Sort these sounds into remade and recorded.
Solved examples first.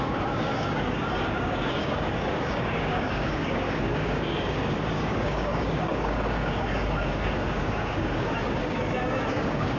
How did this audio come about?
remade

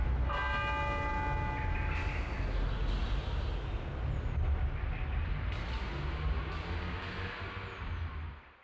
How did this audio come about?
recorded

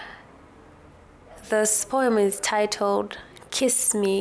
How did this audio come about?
recorded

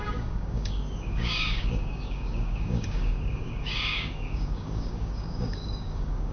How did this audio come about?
remade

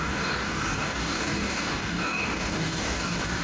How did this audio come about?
remade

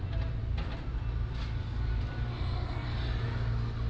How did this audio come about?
recorded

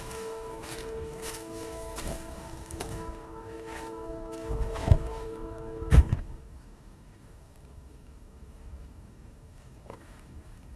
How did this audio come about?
remade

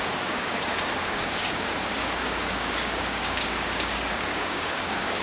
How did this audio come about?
remade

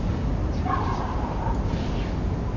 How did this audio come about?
recorded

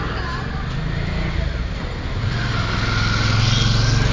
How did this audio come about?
recorded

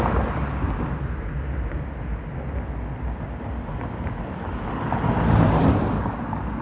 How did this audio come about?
recorded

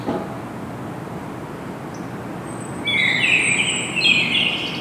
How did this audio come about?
recorded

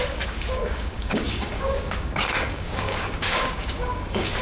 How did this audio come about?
remade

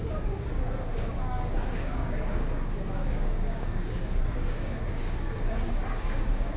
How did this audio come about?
remade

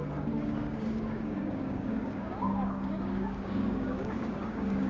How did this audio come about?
remade